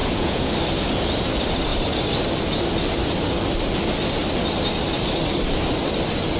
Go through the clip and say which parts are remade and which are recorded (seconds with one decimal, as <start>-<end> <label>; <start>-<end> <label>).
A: 0.0-0.5 remade; 0.5-6.4 recorded